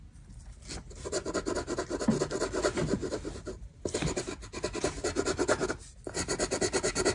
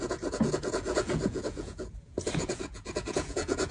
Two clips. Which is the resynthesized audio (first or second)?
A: second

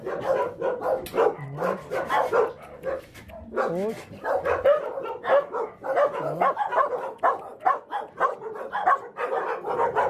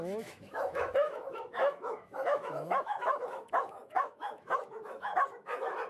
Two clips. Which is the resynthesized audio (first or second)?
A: second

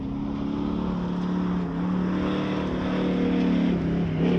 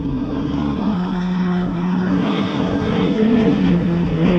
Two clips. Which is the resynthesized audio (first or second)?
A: second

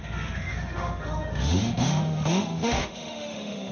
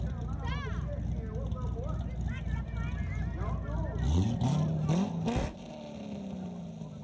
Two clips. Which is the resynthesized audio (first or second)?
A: first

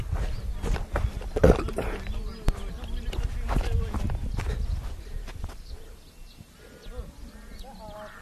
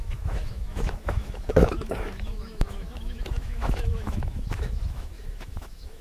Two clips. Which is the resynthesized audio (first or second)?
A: second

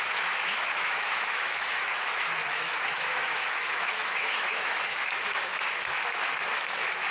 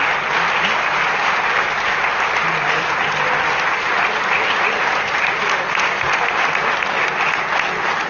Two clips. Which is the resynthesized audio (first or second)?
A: first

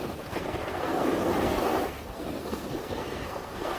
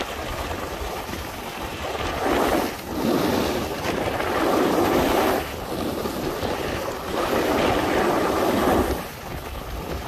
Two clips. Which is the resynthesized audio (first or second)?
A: first